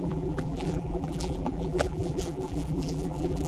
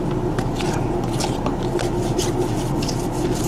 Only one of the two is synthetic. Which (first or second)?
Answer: first